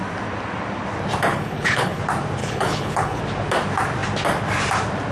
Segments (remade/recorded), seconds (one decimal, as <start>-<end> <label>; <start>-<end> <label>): 0.0-1.3 recorded; 1.3-2.0 remade; 2.0-2.4 recorded; 2.4-3.2 remade; 3.2-5.1 recorded